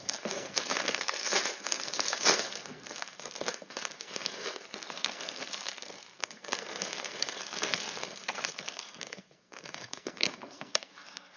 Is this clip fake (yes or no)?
yes